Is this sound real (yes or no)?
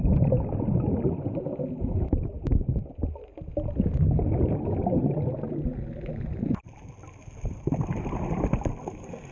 yes